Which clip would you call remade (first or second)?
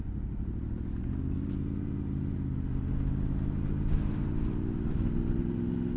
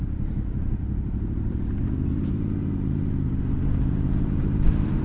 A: second